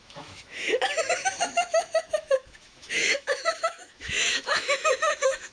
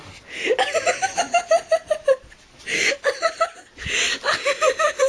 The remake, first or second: first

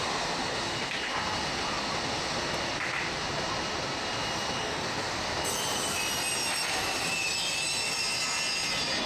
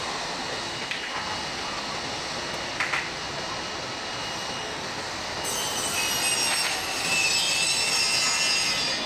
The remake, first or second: first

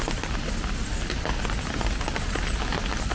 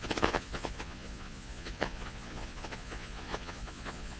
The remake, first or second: second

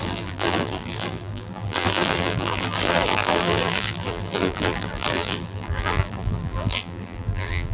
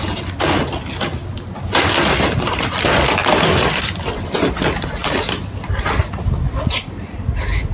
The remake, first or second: first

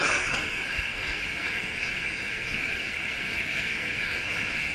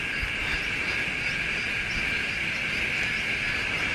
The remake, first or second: first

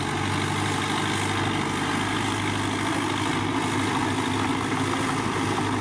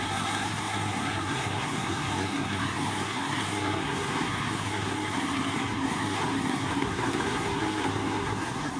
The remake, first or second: second